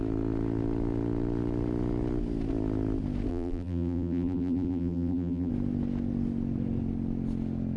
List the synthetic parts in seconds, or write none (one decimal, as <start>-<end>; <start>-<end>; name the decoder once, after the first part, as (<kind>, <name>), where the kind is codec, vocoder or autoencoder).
3.3-5.5 (vocoder, BigVGAN v2)